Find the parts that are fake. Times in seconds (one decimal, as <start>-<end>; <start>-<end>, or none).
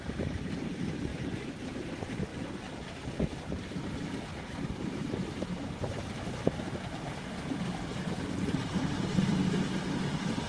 1.1-1.9; 4.3-6.1